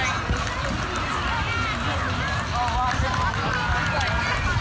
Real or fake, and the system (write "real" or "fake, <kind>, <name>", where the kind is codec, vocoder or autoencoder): real